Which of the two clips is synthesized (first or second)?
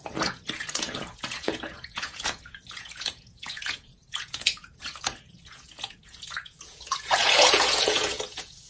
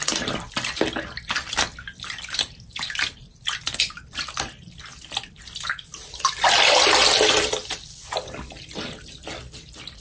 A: first